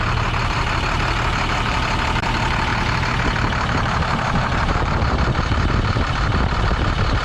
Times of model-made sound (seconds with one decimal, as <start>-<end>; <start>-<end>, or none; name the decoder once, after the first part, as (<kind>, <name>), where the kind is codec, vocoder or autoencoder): 0.0-7.2 (vocoder, BigVGAN v2)